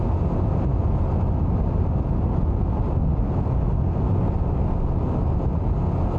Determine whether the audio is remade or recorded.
recorded